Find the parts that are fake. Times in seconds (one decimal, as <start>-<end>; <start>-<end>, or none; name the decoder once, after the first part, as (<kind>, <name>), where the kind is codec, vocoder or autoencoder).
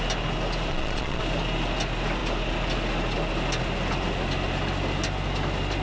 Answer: 0.7-1.2 (vocoder, Vocos)